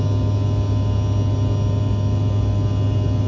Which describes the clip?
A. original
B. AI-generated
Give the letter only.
A